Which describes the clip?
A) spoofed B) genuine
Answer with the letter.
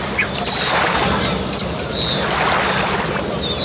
B